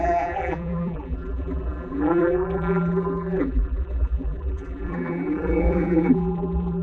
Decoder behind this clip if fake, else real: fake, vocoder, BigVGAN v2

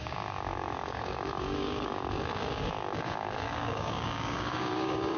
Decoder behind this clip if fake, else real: fake, codec, DAC